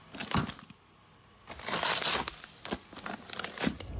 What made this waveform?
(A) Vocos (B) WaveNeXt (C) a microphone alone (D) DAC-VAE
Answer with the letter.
C